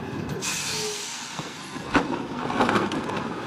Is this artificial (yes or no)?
yes